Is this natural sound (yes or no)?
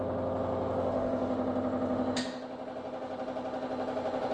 yes